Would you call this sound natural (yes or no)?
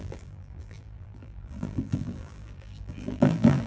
no